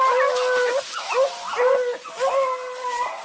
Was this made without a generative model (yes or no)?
yes